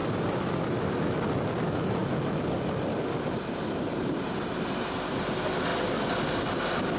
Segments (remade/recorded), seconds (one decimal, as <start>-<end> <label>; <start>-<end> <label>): 0.0-7.0 recorded

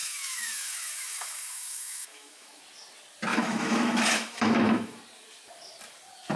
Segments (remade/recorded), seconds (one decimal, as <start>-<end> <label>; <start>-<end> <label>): 0.0-2.6 remade; 2.6-3.3 recorded; 3.3-5.0 remade; 5.0-6.4 recorded

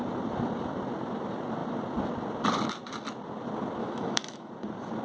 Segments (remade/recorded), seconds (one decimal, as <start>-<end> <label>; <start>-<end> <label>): 0.0-3.8 recorded; 3.8-4.5 remade; 4.5-5.0 recorded

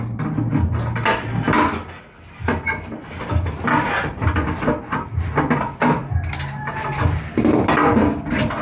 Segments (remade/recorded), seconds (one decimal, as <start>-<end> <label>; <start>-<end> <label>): 0.0-8.6 recorded